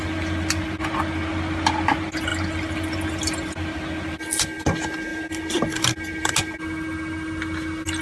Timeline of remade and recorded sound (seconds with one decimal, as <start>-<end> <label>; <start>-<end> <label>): 0.0-8.0 recorded

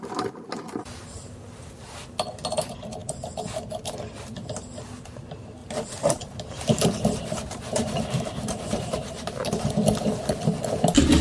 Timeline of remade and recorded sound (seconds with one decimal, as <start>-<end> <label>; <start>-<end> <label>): 0.0-5.6 recorded; 5.6-9.7 remade; 9.7-11.2 recorded

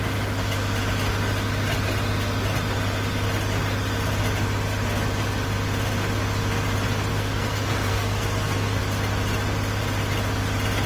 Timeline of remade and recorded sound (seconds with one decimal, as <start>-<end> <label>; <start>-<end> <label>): 0.0-7.1 recorded; 7.1-8.8 remade; 8.8-10.9 recorded

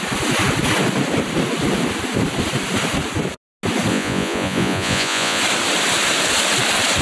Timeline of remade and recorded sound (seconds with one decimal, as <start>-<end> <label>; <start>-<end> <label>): 0.0-3.9 recorded; 3.9-5.4 remade; 5.4-7.0 recorded

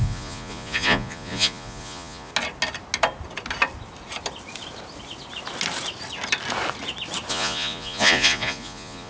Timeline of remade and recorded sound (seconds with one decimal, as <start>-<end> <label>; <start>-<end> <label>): 0.0-2.3 remade; 2.3-7.3 recorded; 7.3-9.1 remade

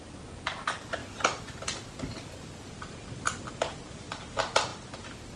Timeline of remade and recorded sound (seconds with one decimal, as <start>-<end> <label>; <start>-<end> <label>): 0.0-5.4 recorded

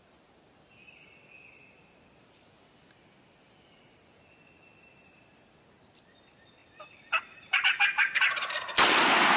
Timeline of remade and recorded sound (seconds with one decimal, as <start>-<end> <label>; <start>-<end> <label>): 0.0-9.4 recorded